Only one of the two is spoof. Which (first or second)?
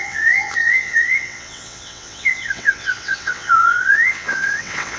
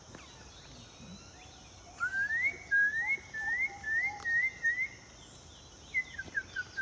first